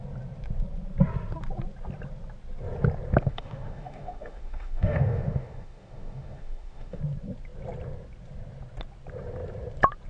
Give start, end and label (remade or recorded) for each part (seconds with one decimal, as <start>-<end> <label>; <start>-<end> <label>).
0.0-3.2 recorded; 3.2-7.0 remade; 7.0-10.1 recorded